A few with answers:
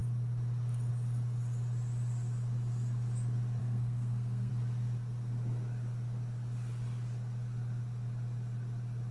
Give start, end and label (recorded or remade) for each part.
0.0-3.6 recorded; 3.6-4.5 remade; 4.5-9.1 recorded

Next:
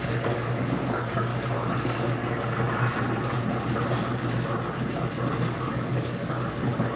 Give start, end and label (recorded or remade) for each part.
0.0-1.3 remade; 1.3-1.8 recorded; 1.8-2.2 remade; 2.2-5.5 recorded; 5.5-7.0 remade